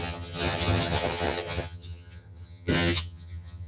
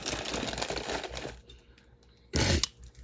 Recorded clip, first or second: second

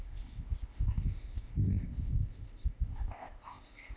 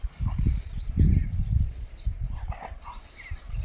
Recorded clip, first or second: second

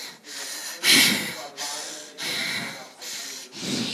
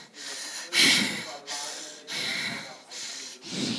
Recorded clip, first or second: first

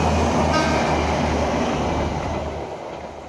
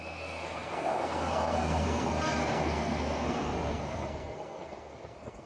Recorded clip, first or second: first